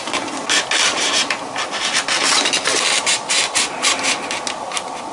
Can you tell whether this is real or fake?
real